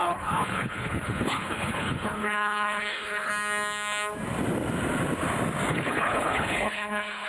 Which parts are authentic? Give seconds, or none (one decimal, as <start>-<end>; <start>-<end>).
3.3-5.7